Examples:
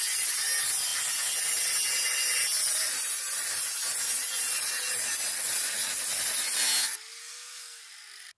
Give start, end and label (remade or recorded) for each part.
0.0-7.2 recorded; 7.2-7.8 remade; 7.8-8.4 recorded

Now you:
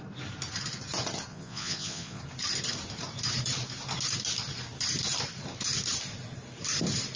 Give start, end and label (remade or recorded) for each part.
0.0-1.3 recorded; 1.3-2.2 remade; 2.2-7.2 recorded

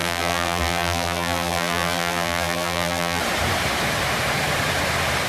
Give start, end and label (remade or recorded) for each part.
0.0-3.2 remade; 3.2-5.3 recorded

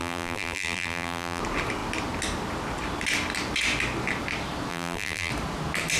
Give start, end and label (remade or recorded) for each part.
0.0-1.4 remade; 1.4-4.7 recorded; 4.7-5.3 remade; 5.3-6.0 recorded

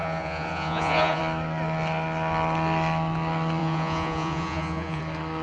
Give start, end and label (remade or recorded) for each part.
0.0-1.2 remade; 1.2-3.6 recorded; 3.6-5.0 remade; 5.0-5.4 recorded

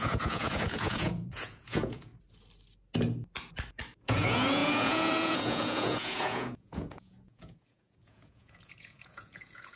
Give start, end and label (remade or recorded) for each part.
0.0-2.1 remade; 2.1-4.0 recorded; 4.0-9.8 remade

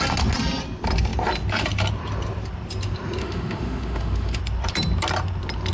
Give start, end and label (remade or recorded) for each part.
0.0-3.2 recorded; 3.2-4.4 remade; 4.4-5.7 recorded

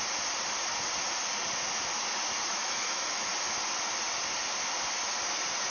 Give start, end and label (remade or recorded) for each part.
0.0-2.5 recorded; 2.5-3.3 remade; 3.3-5.7 recorded